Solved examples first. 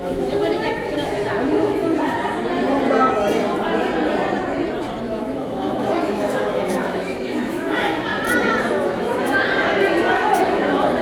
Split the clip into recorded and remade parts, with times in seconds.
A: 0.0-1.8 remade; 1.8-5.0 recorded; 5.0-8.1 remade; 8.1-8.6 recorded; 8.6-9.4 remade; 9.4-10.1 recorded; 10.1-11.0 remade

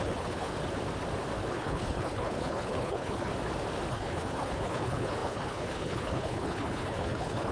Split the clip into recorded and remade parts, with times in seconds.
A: 0.0-0.5 remade; 0.5-1.5 recorded; 1.5-3.3 remade; 3.3-3.9 recorded; 3.9-7.5 remade